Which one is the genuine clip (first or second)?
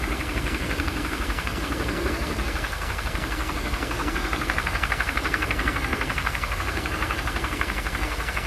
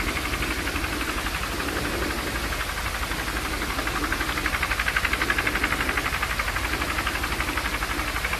second